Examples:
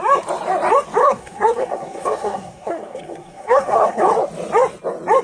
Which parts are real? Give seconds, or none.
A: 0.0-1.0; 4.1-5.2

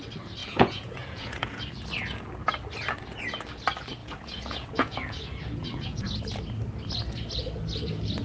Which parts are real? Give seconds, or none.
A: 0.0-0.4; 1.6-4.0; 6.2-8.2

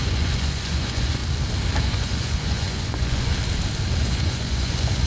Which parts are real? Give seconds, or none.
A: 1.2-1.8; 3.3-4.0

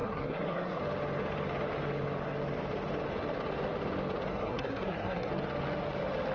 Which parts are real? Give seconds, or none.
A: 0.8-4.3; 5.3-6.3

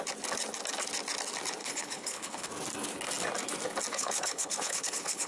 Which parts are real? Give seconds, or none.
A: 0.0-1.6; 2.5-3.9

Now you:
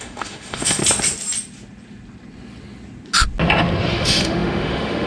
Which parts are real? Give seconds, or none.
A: 0.8-3.9

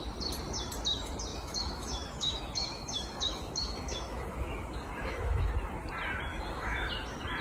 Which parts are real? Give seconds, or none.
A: 0.0-1.3; 5.5-6.3; 6.9-7.4

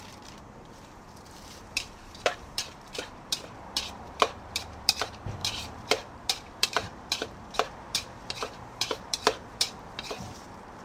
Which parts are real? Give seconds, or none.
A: none